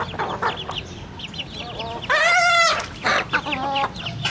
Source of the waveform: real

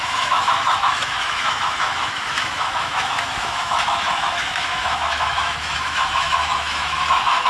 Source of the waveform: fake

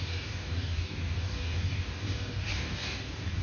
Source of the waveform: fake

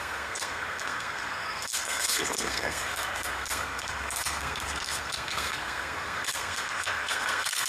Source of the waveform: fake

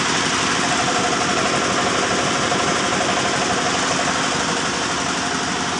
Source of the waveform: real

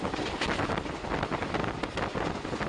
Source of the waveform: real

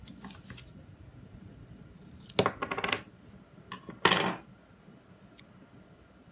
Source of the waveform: real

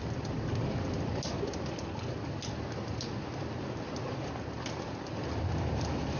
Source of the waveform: real